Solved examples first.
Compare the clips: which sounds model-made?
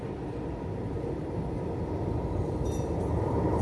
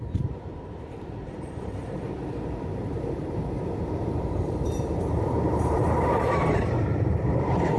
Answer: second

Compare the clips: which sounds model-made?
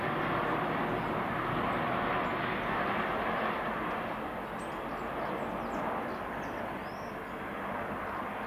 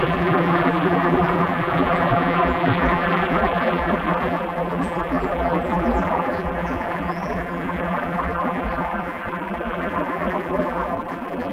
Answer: second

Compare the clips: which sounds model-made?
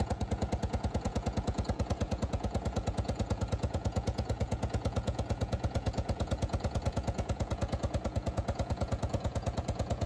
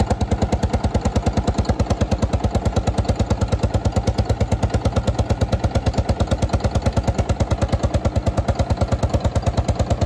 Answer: first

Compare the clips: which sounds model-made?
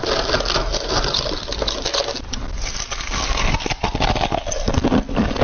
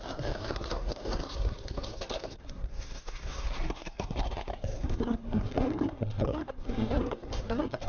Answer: second